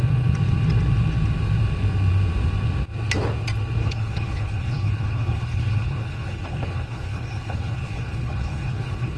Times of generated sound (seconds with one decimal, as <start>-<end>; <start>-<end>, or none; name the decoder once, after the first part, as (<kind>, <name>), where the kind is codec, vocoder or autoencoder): 3.8-9.2 (codec, HILCodec)